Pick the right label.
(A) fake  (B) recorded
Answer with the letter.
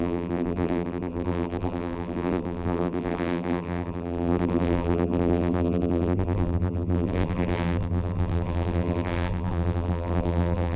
A